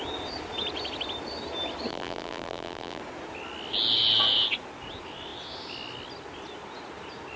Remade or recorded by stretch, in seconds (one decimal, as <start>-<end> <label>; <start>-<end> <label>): 0.0-1.9 recorded; 1.9-3.0 remade; 3.0-7.4 recorded